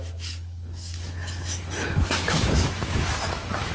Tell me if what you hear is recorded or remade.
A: remade